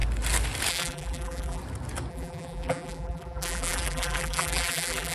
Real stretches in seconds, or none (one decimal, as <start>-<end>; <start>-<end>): 0.0-0.7; 1.6-2.1